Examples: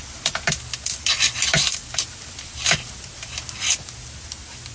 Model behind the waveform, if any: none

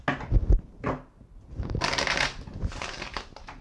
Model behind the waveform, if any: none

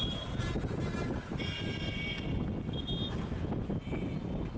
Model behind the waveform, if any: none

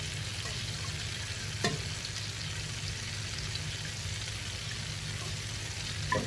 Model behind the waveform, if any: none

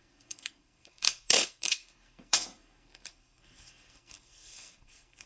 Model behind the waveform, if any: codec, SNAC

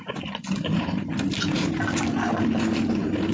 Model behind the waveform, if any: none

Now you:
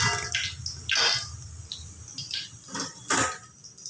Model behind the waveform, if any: none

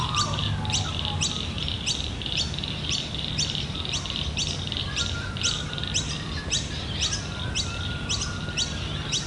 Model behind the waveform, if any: none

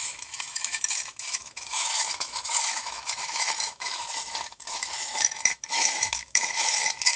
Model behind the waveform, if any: autoencoder, DAC-VAE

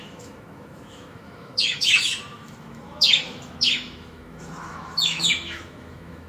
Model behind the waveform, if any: autoencoder, DAC-VAE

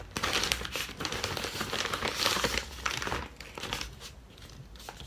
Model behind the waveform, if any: none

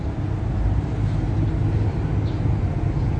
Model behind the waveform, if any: none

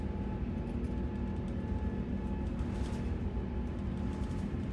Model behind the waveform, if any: none